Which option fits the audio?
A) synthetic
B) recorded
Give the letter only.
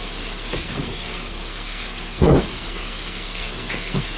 A